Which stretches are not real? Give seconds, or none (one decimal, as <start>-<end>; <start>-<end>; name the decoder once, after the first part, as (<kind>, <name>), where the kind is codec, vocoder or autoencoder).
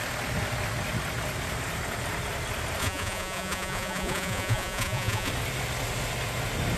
2.8-5.3 (vocoder, Vocos)